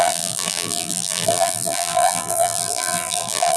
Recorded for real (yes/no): no